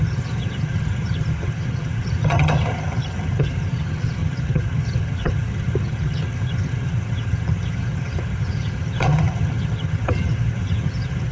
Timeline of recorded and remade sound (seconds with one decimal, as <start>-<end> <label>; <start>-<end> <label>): 0.0-11.3 remade